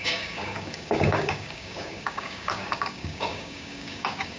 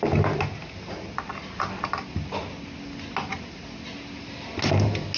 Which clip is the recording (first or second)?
second